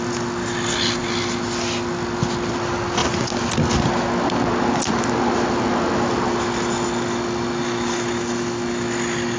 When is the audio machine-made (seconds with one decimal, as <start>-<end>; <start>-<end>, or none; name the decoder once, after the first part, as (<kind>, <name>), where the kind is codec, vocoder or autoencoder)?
none